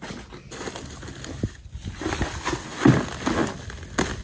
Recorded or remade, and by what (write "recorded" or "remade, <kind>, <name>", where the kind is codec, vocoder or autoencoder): recorded